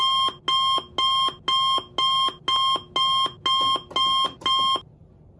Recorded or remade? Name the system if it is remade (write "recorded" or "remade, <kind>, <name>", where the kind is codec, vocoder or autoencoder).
recorded